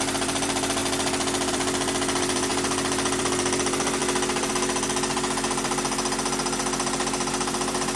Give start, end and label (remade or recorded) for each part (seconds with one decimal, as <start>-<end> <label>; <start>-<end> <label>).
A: 0.0-0.8 remade; 0.8-1.5 recorded; 1.5-2.5 remade; 2.5-3.2 recorded; 3.2-8.0 remade